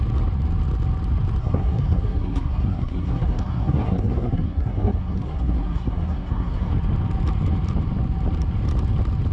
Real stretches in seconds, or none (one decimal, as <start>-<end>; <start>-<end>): 0.0-1.4; 6.7-9.3